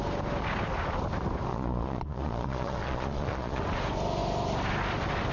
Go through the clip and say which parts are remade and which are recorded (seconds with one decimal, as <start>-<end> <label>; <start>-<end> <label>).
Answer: 0.0-1.5 recorded; 1.5-3.6 remade; 3.6-5.3 recorded